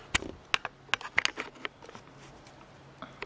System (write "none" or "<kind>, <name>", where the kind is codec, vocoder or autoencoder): none